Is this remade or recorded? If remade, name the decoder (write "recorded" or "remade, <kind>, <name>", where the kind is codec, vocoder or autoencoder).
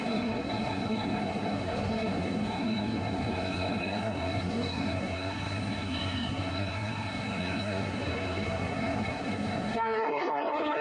remade, codec, SNAC